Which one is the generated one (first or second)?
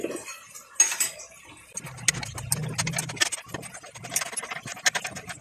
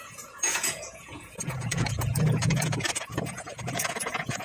second